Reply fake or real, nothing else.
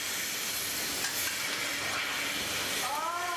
real